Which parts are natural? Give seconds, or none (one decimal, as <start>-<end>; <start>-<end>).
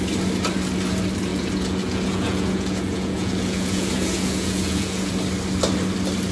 0.0-1.3; 5.1-6.3